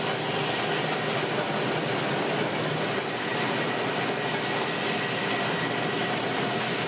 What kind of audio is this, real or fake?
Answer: real